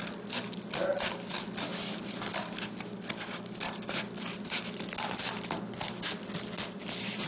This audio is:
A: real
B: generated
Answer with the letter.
A